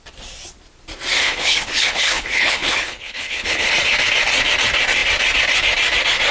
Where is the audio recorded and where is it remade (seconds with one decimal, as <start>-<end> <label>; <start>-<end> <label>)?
0.0-1.2 recorded; 1.2-3.7 remade; 3.7-6.3 recorded